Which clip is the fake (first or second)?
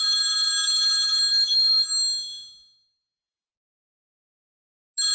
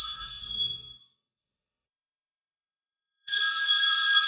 second